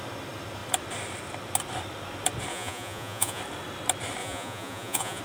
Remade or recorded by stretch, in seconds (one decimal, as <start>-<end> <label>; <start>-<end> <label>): 0.0-2.5 recorded; 2.5-3.4 remade; 3.4-4.2 recorded; 4.2-5.2 remade